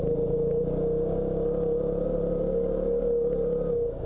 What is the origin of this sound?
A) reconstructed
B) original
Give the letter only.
B